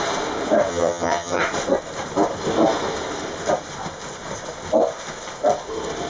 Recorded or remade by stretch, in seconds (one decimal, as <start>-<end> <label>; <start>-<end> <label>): 0.0-0.7 recorded; 0.7-1.4 remade; 1.4-6.1 recorded